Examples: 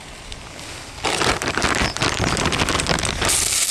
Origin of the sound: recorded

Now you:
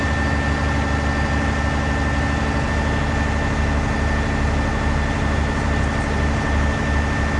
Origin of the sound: recorded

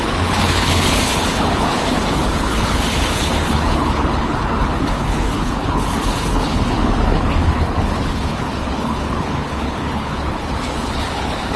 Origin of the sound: remade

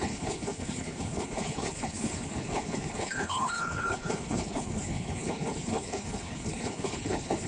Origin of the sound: remade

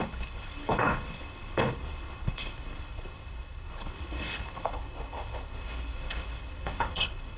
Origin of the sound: remade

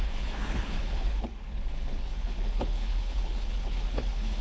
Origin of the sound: remade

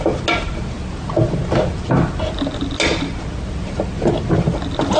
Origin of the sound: recorded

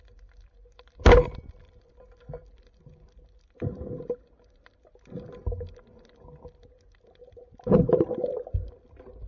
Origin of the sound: recorded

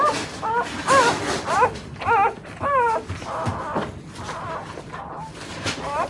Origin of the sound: recorded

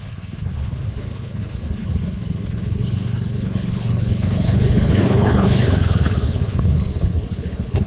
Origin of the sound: remade